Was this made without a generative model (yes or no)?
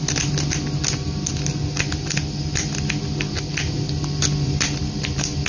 yes